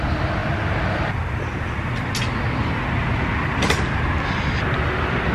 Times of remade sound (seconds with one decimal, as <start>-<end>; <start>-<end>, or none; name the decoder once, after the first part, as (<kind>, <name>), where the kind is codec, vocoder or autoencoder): none